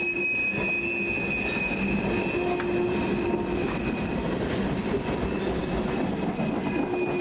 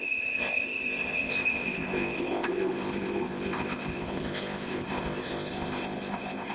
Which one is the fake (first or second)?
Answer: second